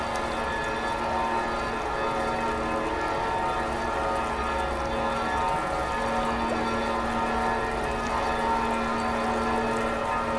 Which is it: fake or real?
real